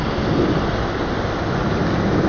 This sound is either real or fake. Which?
real